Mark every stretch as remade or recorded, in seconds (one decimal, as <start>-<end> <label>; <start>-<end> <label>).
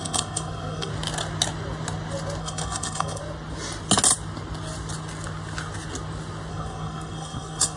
0.0-0.9 remade; 0.9-2.4 recorded; 2.4-3.2 remade; 3.2-6.5 recorded; 6.5-7.8 remade